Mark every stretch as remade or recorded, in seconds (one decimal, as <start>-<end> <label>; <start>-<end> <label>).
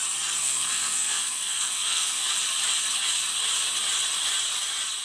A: 0.0-0.4 recorded; 0.4-2.3 remade; 2.3-5.0 recorded